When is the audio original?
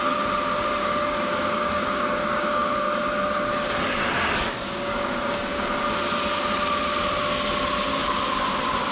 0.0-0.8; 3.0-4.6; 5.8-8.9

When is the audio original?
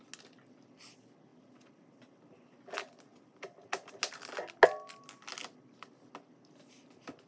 0.0-7.3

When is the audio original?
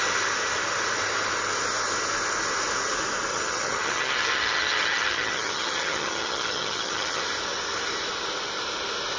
0.0-3.3; 7.2-9.2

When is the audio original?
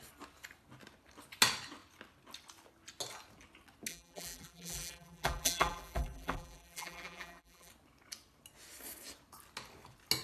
0.0-3.9; 7.7-10.2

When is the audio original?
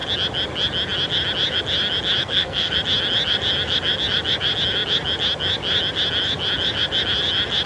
0.0-2.2; 2.7-7.7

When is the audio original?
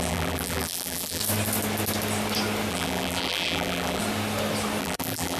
1.2-2.7; 4.0-4.8